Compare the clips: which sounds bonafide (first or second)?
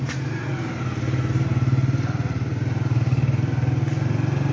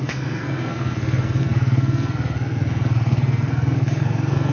first